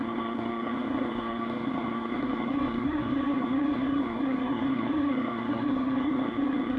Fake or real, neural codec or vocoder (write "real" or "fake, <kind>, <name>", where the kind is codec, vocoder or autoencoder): fake, codec, SNAC